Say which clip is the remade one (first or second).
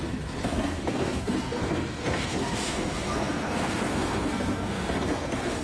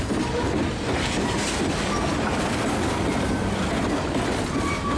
first